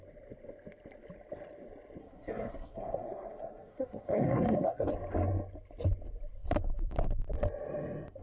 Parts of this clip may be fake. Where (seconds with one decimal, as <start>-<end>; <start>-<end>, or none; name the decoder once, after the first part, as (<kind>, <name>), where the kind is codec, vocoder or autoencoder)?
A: 2.0-4.9 (codec, SNAC)